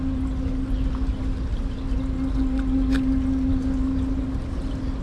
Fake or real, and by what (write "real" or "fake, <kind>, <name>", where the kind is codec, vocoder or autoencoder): real